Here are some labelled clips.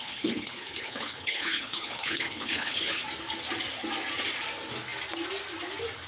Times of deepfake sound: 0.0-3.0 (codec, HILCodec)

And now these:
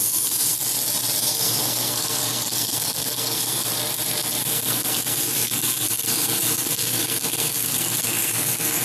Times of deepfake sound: 0.0-0.6 (codec, SNAC); 1.2-3.7; 4.4-8.8

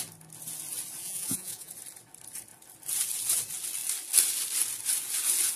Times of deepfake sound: 1.0-1.7 (vocoder, Vocos)